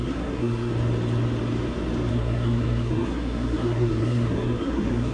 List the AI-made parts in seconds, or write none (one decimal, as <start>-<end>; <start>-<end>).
0.0-0.7; 2.1-5.1